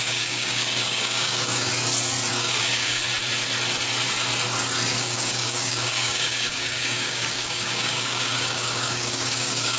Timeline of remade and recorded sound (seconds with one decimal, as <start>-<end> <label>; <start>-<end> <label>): 0.0-1.7 remade; 1.7-2.3 recorded; 2.3-3.0 remade; 3.0-5.0 recorded; 5.0-9.8 remade